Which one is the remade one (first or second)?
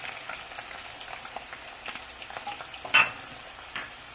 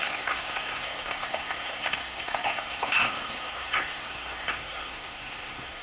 second